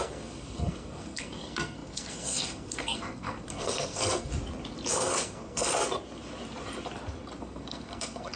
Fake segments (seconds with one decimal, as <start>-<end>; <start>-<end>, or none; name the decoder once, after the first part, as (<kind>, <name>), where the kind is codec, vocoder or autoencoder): 0.0-4.3 (codec, SNAC); 4.9-5.8; 7.4-8.4